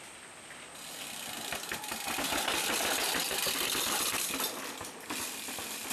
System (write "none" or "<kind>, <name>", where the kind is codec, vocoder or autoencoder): none